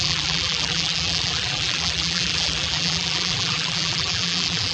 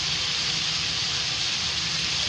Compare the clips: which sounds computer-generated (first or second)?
first